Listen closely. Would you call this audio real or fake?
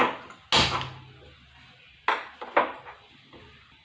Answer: real